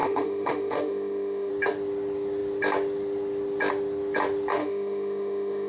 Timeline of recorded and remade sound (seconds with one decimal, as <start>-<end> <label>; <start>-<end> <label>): 0.0-1.5 remade; 1.5-4.6 recorded; 4.6-5.7 remade